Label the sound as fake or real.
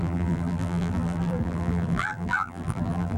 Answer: fake